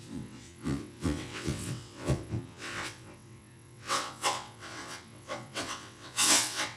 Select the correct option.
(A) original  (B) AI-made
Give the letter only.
B